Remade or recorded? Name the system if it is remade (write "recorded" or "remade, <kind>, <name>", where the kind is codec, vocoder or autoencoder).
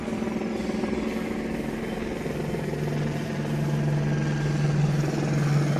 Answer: recorded